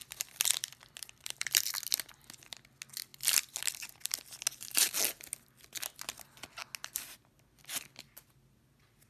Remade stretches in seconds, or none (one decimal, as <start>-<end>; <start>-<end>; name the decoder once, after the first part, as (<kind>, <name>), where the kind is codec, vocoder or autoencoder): 0.0-1.7 (vocoder, BigVGAN v2)